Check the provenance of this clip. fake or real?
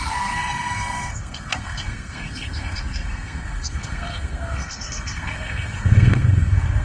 fake